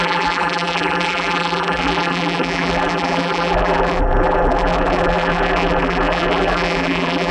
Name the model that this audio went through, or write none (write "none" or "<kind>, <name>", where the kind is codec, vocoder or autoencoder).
vocoder, BigVGAN v2